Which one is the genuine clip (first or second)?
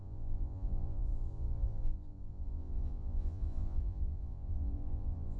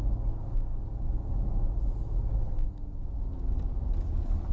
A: second